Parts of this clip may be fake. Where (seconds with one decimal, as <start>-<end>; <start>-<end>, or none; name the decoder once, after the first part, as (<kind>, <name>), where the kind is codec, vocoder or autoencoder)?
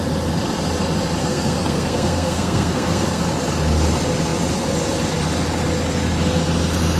1.2-3.2 (codec, SNAC)